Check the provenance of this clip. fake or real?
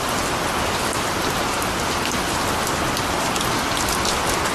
real